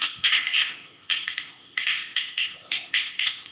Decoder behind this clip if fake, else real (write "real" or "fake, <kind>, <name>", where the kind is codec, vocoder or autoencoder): fake, codec, ZipCodec